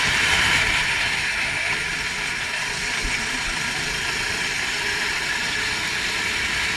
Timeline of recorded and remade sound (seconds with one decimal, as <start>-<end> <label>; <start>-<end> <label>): 0.0-6.8 recorded